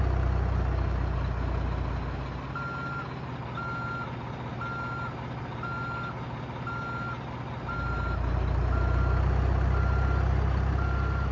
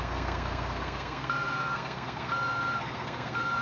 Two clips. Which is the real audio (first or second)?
first